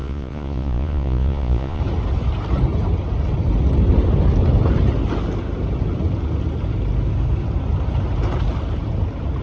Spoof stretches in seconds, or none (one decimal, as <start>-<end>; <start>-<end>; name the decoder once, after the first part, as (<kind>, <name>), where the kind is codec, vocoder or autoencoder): 0.0-1.8 (vocoder, Vocos)